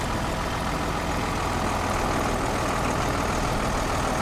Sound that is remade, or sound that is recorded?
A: recorded